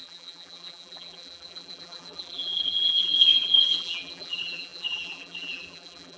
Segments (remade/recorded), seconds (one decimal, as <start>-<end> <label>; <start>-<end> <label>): 0.0-6.2 remade